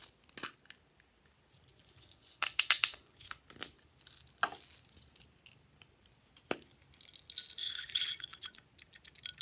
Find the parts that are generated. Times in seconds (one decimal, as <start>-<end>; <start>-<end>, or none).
1.7-3.3; 7.6-8.7